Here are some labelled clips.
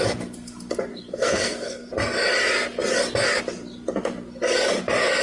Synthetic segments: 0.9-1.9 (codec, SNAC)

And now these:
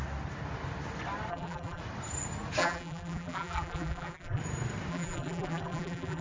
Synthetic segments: 1.3-1.8 (vocoder, BigVGAN v2); 2.6-4.4; 4.9-6.2

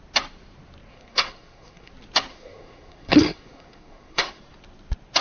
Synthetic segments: 0.9-1.9 (codec, SNAC); 2.3-4.4

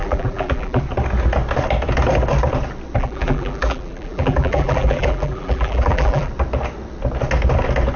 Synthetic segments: 0.0-0.8 (vocoder, BigVGAN v2); 3.0-6.3

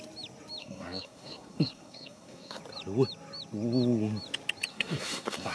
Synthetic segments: 0.6-2.6 (codec, SNAC); 4.7-5.5

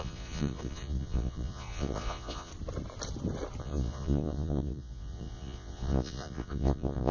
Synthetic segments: 0.0-2.5 (vocoder, Vocos); 3.6-7.1

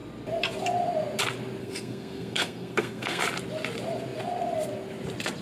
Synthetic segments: 1.6-3.2 (codec, SNAC)